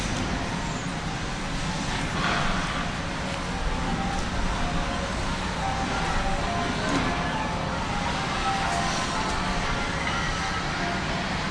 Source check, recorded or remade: recorded